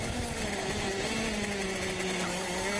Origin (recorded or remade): recorded